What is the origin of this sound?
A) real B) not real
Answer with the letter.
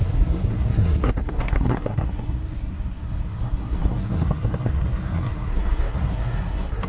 B